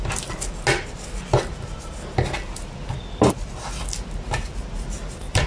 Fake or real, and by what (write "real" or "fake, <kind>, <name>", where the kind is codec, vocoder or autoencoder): real